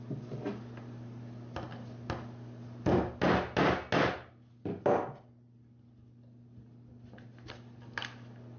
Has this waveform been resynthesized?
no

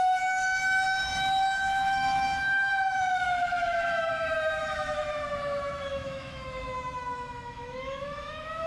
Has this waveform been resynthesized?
yes